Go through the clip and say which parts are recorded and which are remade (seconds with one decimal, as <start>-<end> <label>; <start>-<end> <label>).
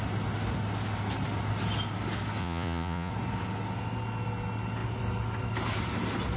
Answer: 0.0-2.4 recorded; 2.4-3.1 remade; 3.1-6.4 recorded